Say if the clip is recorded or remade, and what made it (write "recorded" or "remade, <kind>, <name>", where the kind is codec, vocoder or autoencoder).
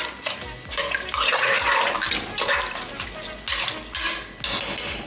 recorded